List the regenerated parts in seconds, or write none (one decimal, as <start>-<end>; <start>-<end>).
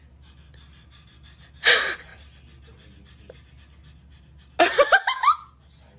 none